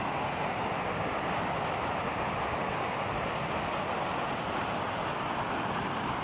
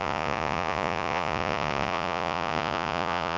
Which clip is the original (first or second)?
first